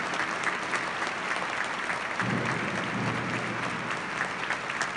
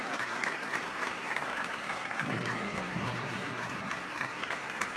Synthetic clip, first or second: second